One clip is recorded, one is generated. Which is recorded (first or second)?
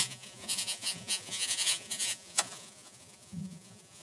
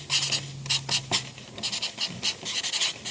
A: second